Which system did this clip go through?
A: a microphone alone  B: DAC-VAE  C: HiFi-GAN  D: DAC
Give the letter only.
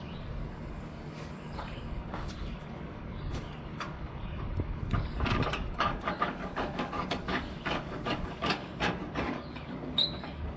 D